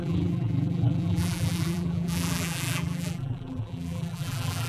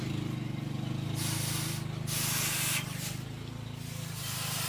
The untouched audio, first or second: second